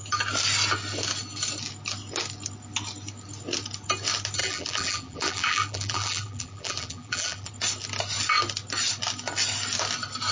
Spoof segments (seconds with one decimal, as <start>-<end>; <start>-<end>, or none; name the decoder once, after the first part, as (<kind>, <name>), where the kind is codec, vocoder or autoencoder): 4.4-7.5 (vocoder, BigVGAN v2)